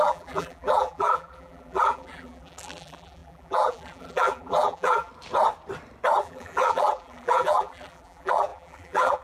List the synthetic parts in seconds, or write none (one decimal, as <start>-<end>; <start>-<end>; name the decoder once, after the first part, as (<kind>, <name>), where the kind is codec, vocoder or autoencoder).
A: 0.0-5.1 (vocoder, BigVGAN v2); 6.2-9.2